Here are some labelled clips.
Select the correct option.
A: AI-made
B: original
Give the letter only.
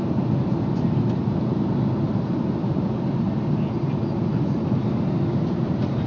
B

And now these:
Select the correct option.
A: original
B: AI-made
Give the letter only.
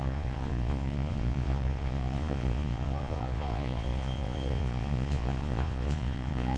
B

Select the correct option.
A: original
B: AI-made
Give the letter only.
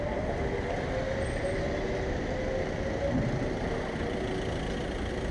A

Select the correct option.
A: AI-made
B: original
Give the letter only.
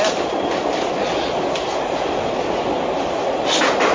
B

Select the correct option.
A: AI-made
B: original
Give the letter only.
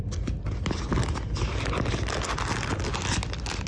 B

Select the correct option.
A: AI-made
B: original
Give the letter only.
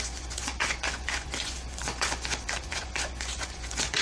A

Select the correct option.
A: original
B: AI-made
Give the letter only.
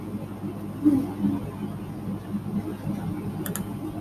A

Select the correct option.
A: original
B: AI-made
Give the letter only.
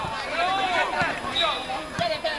A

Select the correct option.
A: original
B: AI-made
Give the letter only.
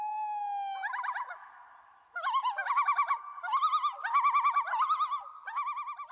A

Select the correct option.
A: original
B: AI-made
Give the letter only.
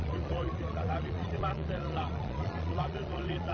B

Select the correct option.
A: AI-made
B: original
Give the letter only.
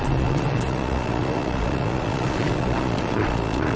A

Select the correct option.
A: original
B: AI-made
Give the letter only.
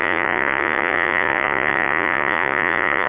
B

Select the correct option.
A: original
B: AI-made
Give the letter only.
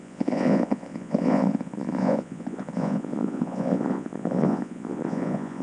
B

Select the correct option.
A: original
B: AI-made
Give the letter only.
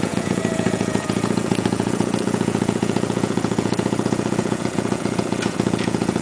B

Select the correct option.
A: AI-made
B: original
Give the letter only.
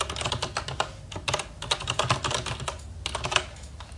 B